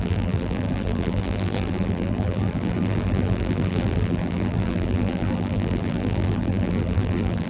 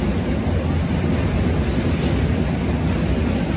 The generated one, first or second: first